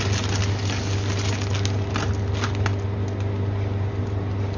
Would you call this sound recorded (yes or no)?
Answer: yes